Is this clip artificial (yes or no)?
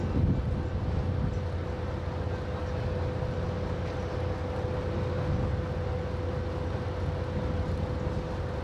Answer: no